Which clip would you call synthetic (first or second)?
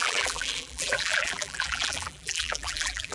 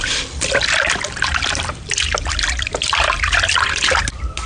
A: first